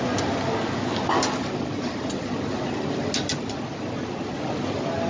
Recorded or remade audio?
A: recorded